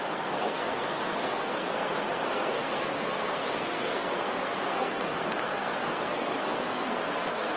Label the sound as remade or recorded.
remade